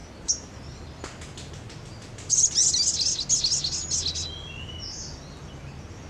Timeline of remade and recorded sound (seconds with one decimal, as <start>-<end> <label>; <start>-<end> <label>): 0.0-0.6 remade; 0.6-6.1 recorded